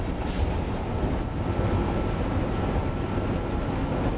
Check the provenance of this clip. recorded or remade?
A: recorded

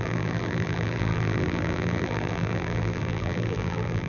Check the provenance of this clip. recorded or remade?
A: remade